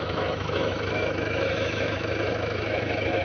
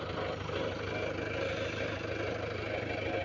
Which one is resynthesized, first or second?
first